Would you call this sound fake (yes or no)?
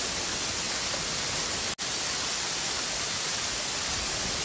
no